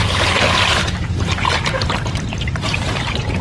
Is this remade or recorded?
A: remade